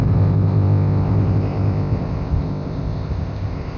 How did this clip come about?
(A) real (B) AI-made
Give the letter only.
B